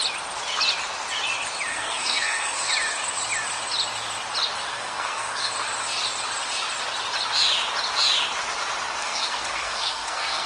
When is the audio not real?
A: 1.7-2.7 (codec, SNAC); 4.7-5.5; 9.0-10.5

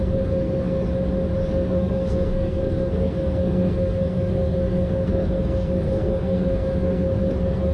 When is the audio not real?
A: 0.0-0.9 (codec, SNAC); 1.5-7.7

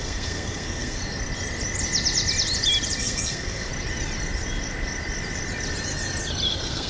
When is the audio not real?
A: 0.0-1.0 (codec, SNAC); 3.0-3.7; 6.5-6.9

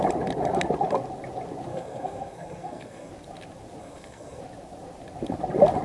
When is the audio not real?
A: 1.7-3.1 (codec, SNAC); 3.8-4.4

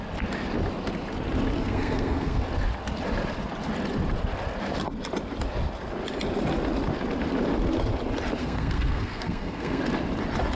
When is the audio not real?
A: 1.6-2.4 (codec, SNAC); 8.4-9.8

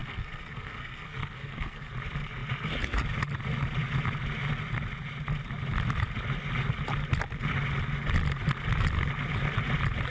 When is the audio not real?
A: 0.0-1.9 (codec, SNAC)

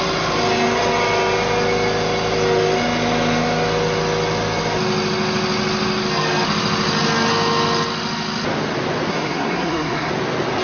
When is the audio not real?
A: 9.1-10.1 (codec, SNAC)